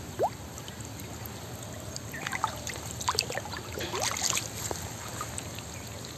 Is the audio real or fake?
real